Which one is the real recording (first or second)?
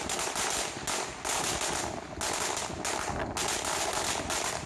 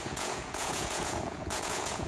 first